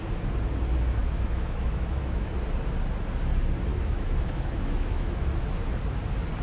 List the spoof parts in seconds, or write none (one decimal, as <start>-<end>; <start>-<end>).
1.0-2.3; 3.7-5.2